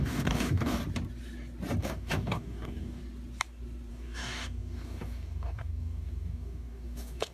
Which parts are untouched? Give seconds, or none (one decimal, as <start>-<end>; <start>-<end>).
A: 0.8-1.8; 3.0-3.9